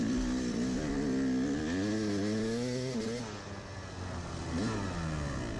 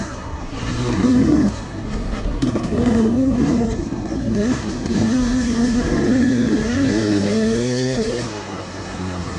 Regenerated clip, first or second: second